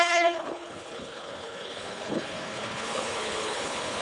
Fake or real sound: fake